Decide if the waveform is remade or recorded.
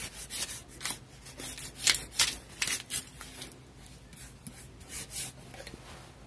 recorded